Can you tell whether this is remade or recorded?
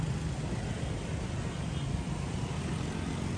recorded